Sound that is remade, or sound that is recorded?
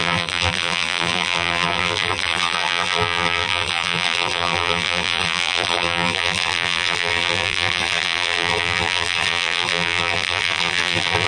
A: remade